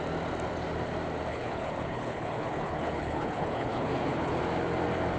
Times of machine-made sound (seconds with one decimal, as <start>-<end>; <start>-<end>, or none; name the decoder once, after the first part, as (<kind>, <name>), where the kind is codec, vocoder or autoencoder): 1.3-4.4 (codec, HILCodec)